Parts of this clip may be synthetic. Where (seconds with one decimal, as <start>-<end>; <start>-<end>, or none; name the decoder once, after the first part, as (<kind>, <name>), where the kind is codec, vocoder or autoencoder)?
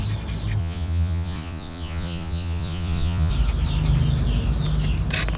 0.6-3.3 (vocoder, Vocos)